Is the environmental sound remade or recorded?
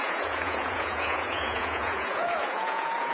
remade